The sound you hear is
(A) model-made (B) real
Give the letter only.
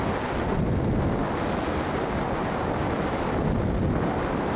B